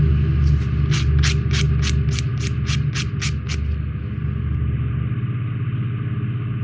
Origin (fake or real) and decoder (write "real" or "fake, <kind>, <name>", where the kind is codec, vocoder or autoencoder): real